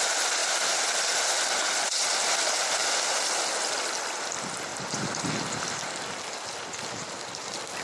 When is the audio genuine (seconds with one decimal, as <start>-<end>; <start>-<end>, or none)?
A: 0.0-2.8; 3.6-7.8